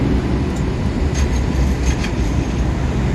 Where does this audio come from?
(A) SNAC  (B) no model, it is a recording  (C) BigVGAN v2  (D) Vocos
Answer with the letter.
B